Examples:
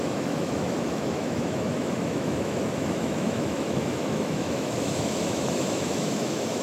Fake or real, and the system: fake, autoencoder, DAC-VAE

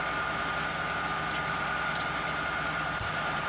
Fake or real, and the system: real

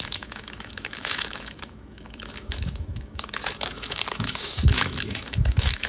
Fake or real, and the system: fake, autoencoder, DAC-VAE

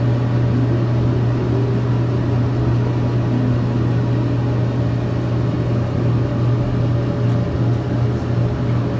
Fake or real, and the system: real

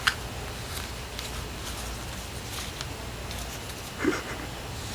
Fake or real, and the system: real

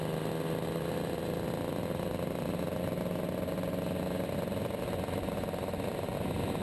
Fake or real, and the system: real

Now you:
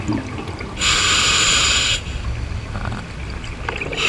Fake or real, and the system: real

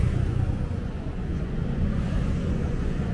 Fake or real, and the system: fake, vocoder, Vocos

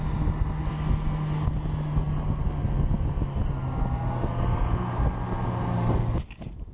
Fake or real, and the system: real